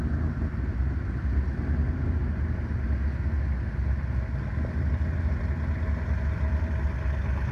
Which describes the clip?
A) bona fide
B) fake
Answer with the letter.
A